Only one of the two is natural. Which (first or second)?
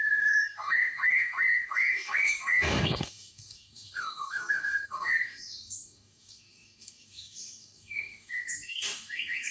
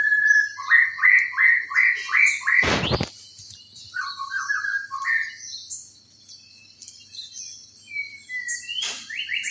second